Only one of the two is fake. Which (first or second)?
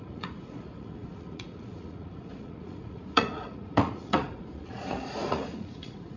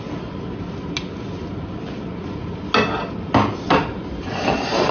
first